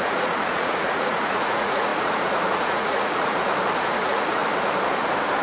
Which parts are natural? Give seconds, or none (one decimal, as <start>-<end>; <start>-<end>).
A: 3.4-4.0; 4.4-5.4